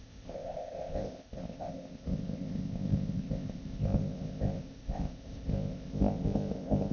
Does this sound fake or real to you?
fake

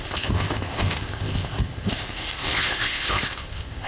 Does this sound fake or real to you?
fake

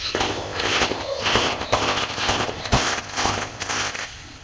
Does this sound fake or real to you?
fake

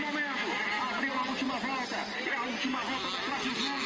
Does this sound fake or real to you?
real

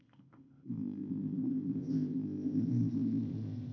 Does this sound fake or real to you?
fake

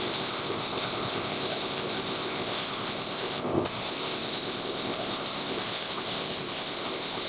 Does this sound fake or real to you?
fake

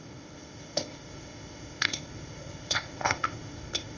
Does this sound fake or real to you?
fake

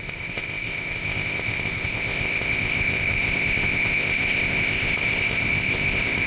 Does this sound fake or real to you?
fake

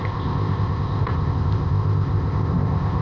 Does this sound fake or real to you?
fake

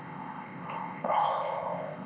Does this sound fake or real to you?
fake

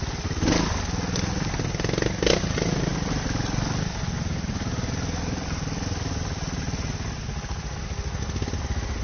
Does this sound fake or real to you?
real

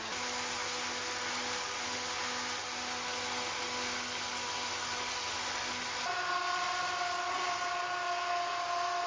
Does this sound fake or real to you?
real